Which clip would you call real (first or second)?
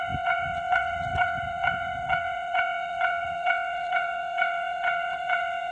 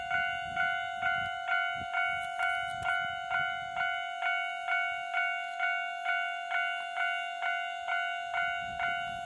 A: second